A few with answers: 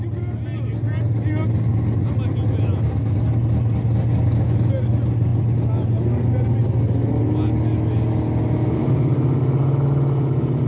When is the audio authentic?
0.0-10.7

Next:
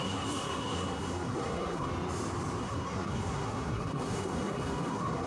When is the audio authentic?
1.9-2.6

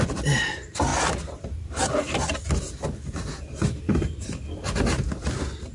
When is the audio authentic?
0.0-5.7

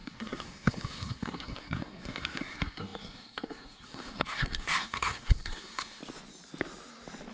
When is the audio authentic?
6.0-7.3

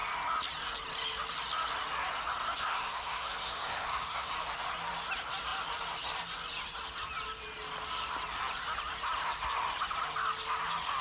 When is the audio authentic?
0.0-2.6; 4.3-11.0

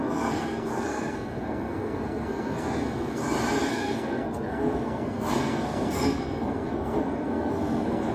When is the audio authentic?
3.2-3.7